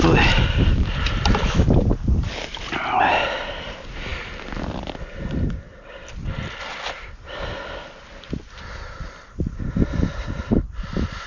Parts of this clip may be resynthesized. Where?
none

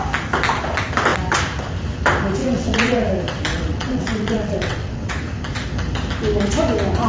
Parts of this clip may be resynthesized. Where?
2.4-3.1 (vocoder, WaveNeXt); 3.5-5.1

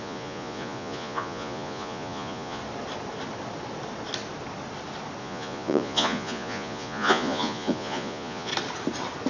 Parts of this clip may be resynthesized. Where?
0.0-2.6 (vocoder, Vocos); 5.2-8.5

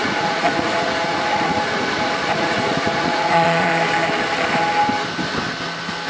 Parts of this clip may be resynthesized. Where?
0.0-3.7 (vocoder, Vocos)

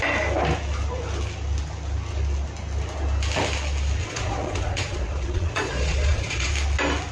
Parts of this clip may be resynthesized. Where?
4.0-6.5 (vocoder, Vocos)

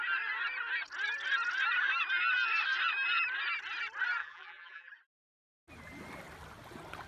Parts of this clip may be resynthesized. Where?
4.2-4.9 (vocoder, BigVGAN v2)